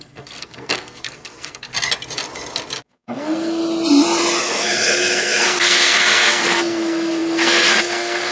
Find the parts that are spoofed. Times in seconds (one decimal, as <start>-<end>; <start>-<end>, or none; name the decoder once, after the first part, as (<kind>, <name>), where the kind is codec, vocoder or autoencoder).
0.0-1.7 (codec, SNAC); 2.8-3.6; 4.4-8.3